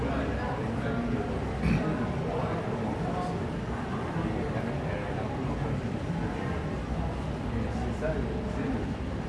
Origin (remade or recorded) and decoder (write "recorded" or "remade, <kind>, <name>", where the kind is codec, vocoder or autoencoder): recorded